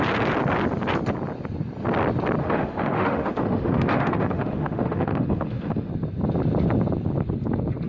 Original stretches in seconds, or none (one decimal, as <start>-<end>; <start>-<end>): 0.0-2.4; 5.9-7.9